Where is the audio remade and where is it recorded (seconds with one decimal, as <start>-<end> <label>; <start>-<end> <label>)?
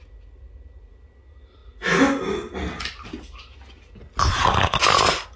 0.0-5.4 recorded